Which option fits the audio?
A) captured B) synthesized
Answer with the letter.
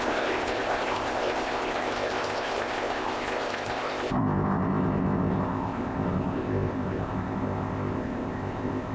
B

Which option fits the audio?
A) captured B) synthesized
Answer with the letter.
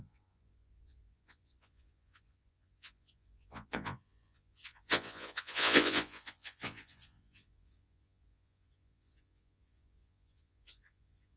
B